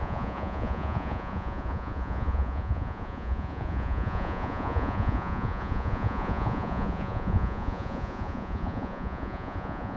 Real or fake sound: fake